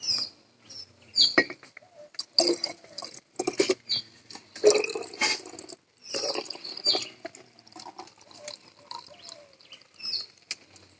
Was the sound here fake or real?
real